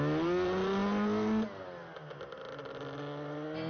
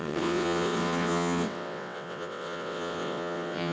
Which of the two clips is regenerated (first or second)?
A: second